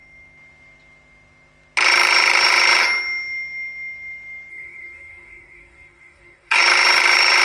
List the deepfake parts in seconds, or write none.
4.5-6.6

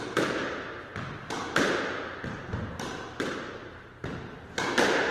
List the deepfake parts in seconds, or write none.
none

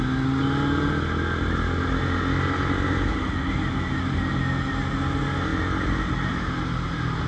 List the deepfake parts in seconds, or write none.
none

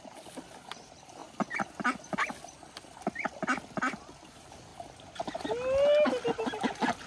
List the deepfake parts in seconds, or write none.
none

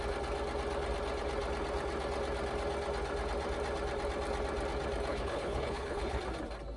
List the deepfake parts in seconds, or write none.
5.1-6.2

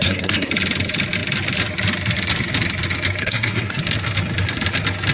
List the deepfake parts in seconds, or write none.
0.0-0.5; 3.2-3.8

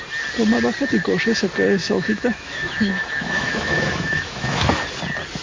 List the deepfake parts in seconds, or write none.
1.8-4.7